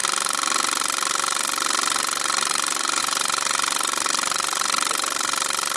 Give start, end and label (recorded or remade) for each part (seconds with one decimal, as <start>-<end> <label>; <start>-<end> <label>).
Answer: 0.0-5.8 recorded